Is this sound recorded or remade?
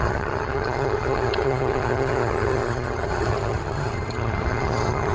remade